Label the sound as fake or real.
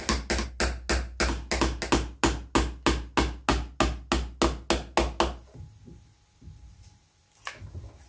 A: real